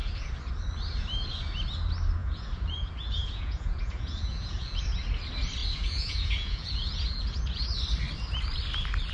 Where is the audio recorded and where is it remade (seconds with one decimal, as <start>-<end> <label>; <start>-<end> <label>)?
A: 0.0-0.5 remade; 0.5-2.2 recorded; 2.2-4.8 remade; 4.8-5.6 recorded; 5.6-7.6 remade; 7.6-9.1 recorded